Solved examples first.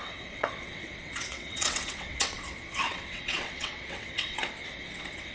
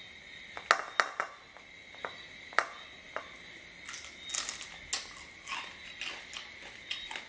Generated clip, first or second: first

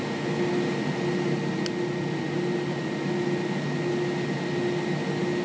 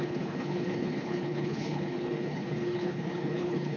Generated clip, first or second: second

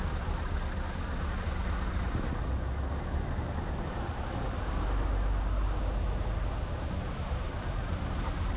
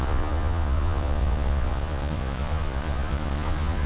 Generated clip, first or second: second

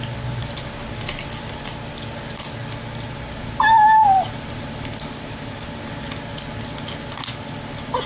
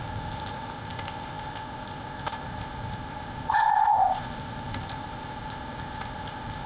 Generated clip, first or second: second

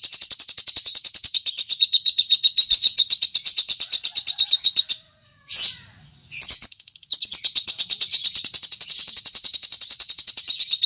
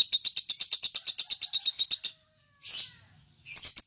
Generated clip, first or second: first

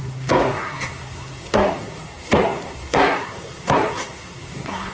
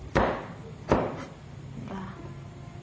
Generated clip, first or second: first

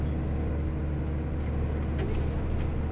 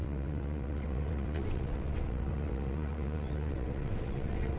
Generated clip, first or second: second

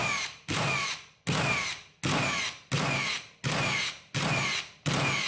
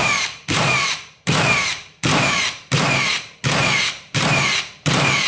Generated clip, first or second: second